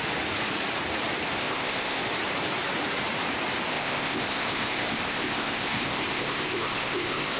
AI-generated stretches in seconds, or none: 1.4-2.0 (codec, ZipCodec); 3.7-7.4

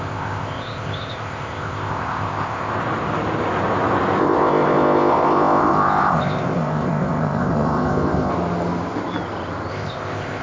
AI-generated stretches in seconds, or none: 0.0-2.7 (codec, ZipCodec); 4.2-8.3; 9.7-10.4